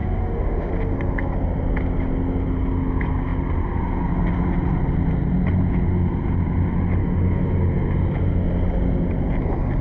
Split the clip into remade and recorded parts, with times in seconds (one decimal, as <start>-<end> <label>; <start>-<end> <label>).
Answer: 0.0-0.7 remade; 0.7-7.0 recorded; 7.0-7.6 remade; 7.6-9.8 recorded